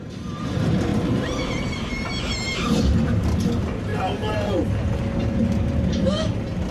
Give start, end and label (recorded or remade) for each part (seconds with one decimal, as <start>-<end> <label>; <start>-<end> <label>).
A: 0.0-0.9 recorded; 0.9-2.9 remade; 2.9-3.9 recorded; 3.9-4.5 remade; 4.5-6.7 recorded